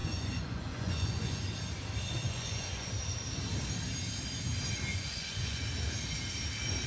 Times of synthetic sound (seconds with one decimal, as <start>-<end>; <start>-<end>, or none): 0.0-1.4; 2.2-2.9; 4.9-5.6